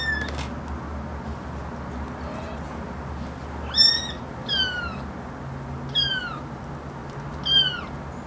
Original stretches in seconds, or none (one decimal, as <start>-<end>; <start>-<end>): 0.0-8.3